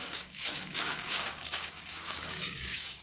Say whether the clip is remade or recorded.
remade